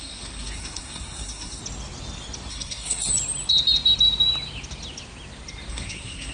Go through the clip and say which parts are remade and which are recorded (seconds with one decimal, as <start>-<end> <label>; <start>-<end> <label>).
0.0-1.6 remade; 1.6-2.5 recorded; 2.5-3.1 remade; 3.1-5.7 recorded; 5.7-6.3 remade